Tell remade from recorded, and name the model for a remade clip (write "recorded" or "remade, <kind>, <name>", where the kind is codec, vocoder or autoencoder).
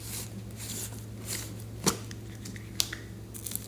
recorded